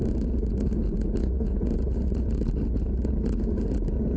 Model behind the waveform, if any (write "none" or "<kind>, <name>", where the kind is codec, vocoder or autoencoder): none